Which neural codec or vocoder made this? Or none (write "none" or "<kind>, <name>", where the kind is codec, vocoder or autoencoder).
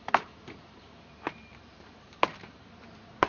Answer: vocoder, BigVGAN v2